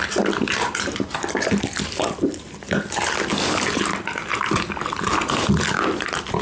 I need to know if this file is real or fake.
real